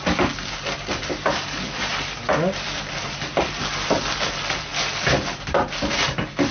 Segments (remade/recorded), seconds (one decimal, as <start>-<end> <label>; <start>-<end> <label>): 0.0-6.5 recorded